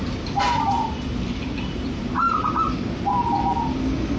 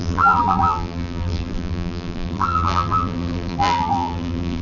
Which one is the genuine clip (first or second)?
first